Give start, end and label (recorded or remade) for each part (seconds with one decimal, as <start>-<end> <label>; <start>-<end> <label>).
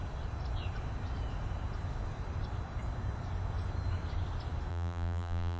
0.0-4.7 recorded; 4.7-5.6 remade